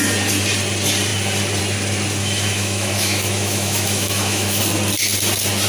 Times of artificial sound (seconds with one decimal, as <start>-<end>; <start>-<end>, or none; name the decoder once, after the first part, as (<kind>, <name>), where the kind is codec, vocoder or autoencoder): 2.2-4.6 (autoencoder, DAC-VAE)